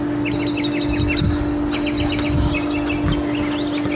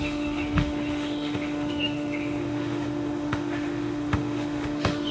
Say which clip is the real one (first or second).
first